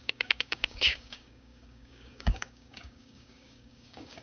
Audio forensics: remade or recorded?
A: remade